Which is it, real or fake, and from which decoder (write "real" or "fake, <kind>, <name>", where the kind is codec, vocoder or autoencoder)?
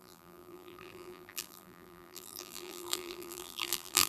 fake, vocoder, BigVGAN v2